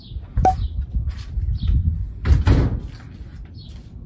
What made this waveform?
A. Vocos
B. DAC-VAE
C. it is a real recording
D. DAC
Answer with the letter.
C